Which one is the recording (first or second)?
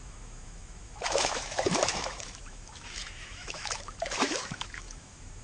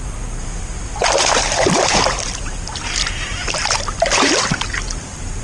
second